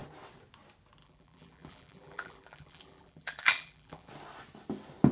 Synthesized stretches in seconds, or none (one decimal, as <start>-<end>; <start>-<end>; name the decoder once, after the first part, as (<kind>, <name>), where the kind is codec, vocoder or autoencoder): 1.0-4.1 (vocoder, BigVGAN v2)